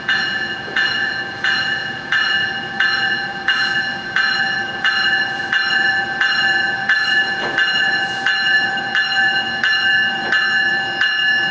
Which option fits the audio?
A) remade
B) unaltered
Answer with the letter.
A